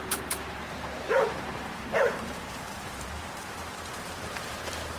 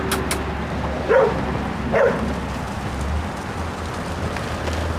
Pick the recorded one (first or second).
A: second